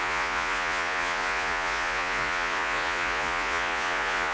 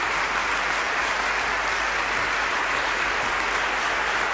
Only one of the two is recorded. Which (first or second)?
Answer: second